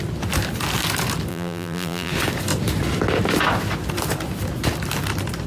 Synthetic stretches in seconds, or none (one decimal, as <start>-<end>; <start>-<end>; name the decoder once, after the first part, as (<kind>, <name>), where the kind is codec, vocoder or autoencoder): 1.3-2.1 (vocoder, BigVGAN v2)